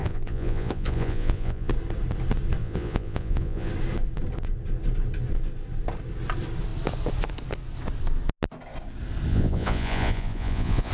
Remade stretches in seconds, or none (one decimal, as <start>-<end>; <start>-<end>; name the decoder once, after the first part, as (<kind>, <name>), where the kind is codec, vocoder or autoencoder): 0.0-1.7 (vocoder, Vocos); 2.6-3.7; 9.3-10.9